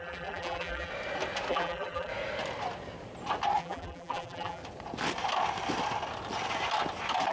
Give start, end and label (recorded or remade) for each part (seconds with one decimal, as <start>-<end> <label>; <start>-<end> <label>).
0.0-0.9 remade; 0.9-1.5 recorded; 1.5-2.1 remade; 2.1-3.6 recorded; 3.6-4.6 remade; 4.6-7.3 recorded